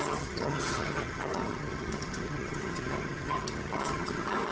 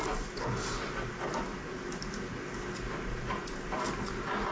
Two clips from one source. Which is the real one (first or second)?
second